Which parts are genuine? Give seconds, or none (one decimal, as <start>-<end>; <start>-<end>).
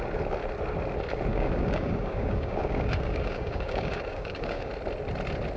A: 0.0-1.3; 4.7-5.6